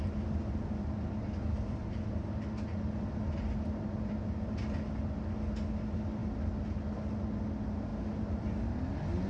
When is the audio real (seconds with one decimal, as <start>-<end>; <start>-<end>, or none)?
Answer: 0.0-9.3